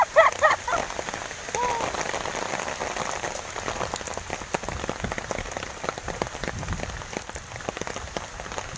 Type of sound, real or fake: real